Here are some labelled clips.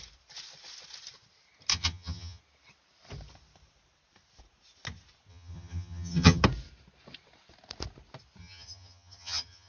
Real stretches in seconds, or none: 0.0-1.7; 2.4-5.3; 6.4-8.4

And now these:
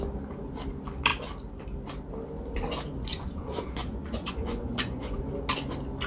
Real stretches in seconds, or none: 0.0-3.1; 5.2-6.1

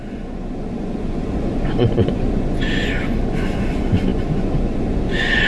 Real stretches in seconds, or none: none